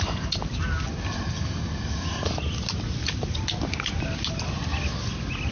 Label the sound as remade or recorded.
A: recorded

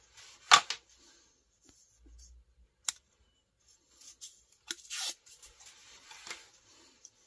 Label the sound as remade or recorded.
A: recorded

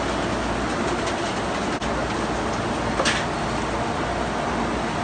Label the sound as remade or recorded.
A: recorded